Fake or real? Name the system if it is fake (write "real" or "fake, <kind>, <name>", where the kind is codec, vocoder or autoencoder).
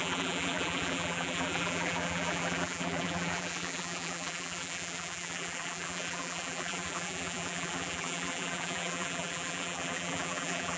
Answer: fake, vocoder, BigVGAN v2